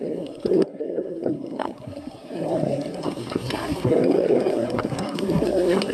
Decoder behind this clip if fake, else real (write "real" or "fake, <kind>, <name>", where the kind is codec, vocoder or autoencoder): fake, codec, SNAC